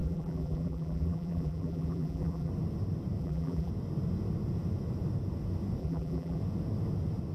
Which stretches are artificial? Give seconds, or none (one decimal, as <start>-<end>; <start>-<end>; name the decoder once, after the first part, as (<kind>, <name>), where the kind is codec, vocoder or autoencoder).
0.0-2.5 (vocoder, BigVGAN v2); 3.2-3.7; 5.8-6.4